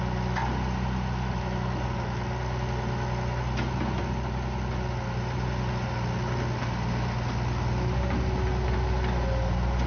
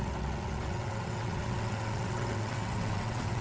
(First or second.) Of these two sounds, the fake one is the second